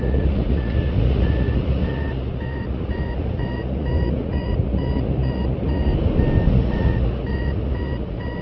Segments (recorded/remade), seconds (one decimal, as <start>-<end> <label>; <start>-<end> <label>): 0.0-5.9 remade; 5.9-6.5 recorded; 6.5-8.4 remade